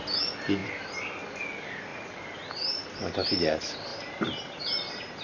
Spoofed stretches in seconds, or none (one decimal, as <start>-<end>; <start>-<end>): none